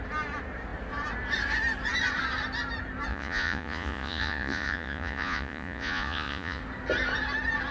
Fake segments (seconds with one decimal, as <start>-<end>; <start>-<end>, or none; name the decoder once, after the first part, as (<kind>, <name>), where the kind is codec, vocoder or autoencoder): 3.1-6.6 (vocoder, Vocos)